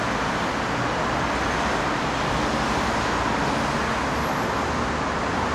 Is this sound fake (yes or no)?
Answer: no